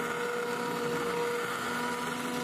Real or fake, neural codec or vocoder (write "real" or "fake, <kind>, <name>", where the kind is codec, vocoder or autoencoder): real